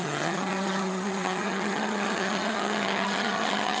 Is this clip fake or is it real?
fake